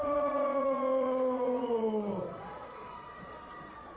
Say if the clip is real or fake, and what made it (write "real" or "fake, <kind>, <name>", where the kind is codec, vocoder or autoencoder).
fake, vocoder, Vocos